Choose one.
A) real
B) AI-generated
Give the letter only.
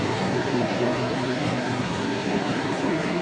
B